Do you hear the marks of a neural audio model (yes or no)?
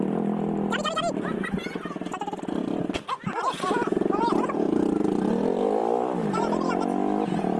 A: no